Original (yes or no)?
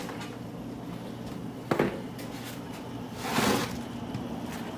yes